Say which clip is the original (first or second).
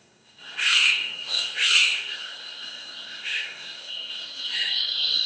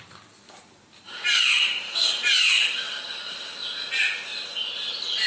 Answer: second